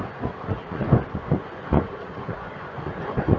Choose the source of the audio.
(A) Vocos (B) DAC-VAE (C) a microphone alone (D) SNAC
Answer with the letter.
A